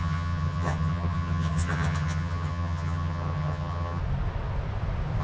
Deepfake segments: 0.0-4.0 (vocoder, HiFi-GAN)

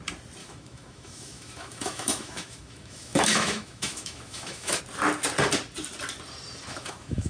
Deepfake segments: 0.4-4.8 (autoencoder, DAC-VAE); 6.7-7.3

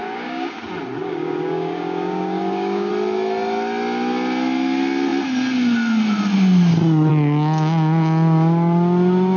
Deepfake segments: 0.0-0.6 (codec, DAC); 1.0-2.9

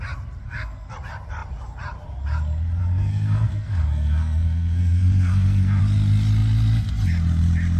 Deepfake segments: 0.4-0.9 (codec, SNAC); 2.8-5.8

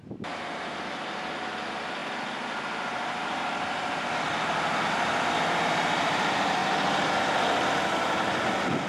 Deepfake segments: none